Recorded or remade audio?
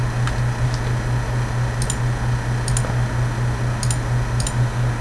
recorded